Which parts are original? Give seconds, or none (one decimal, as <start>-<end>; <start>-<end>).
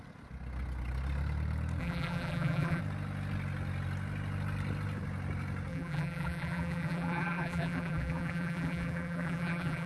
0.0-1.8; 2.8-5.7